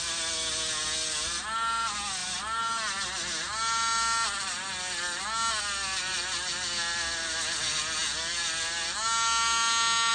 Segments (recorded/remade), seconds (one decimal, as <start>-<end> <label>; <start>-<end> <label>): 0.0-10.1 recorded